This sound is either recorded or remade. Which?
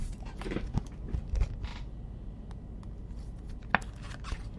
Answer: recorded